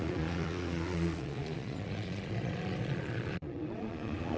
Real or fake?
fake